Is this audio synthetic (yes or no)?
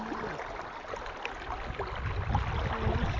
no